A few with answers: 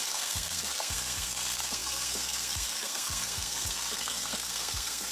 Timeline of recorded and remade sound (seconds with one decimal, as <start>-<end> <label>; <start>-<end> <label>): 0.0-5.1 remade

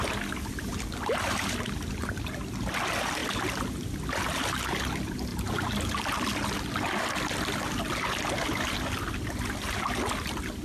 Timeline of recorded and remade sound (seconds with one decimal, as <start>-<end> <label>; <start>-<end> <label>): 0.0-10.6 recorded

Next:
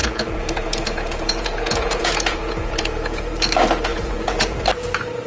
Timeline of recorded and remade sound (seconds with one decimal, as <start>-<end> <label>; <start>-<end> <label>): 0.0-3.2 remade; 3.2-3.9 recorded; 3.9-4.6 remade; 4.6-5.3 recorded

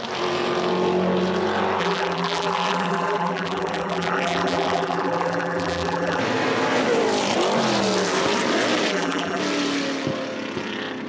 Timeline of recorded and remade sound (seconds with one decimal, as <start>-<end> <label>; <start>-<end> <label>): 0.0-1.8 recorded; 1.8-6.2 remade; 6.2-8.9 recorded; 8.9-9.4 remade; 9.4-11.1 recorded

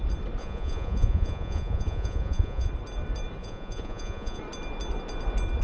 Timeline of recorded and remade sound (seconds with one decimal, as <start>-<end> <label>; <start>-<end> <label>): 0.0-0.4 recorded; 0.4-2.7 remade; 2.7-3.4 recorded; 3.4-4.4 remade; 4.4-5.6 recorded

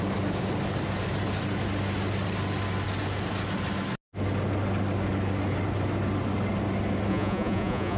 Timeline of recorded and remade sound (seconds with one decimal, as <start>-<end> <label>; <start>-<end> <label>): 0.0-7.1 recorded; 7.1-8.0 remade

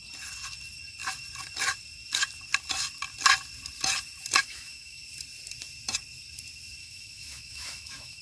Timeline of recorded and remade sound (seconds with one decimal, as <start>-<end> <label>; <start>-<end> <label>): 0.0-4.4 recorded; 4.4-5.0 remade; 5.0-6.8 recorded; 6.8-8.2 remade

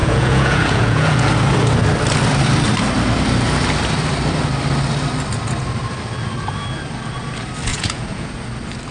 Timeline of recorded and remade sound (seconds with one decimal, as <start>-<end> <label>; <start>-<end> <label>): 0.0-1.3 remade; 1.3-7.7 recorded; 7.7-8.3 remade; 8.3-8.9 recorded